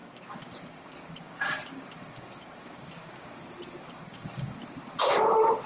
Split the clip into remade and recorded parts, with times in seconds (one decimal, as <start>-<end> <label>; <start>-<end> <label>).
0.0-3.4 remade; 3.4-3.8 recorded; 3.8-4.6 remade; 4.6-5.7 recorded